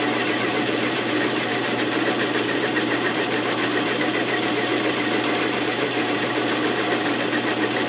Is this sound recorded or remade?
remade